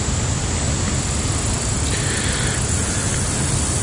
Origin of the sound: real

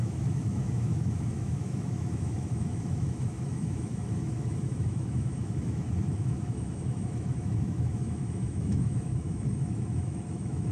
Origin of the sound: fake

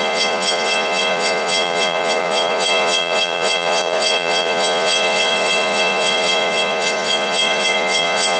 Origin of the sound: fake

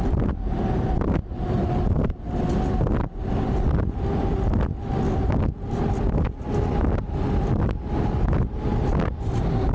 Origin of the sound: real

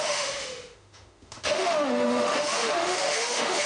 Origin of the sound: fake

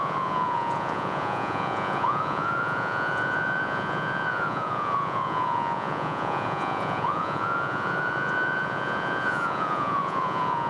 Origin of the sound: fake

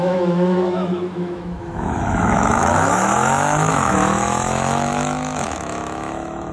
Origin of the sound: fake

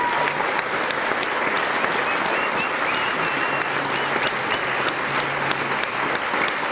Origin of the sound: real